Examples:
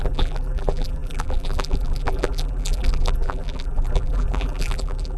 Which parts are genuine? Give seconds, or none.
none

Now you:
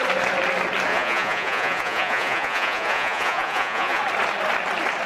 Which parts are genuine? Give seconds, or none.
0.0-0.9; 4.0-5.1

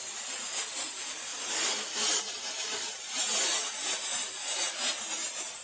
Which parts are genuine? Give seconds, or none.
0.0-1.3; 3.2-5.6

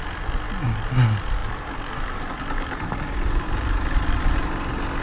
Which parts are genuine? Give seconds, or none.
0.0-5.0

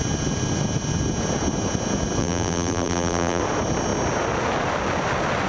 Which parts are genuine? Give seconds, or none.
0.0-2.2; 3.4-5.5